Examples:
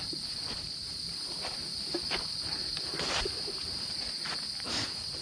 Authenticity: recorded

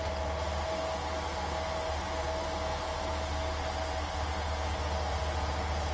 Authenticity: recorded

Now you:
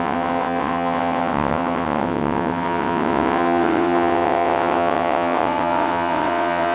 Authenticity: remade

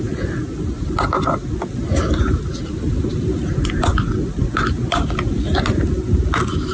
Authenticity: recorded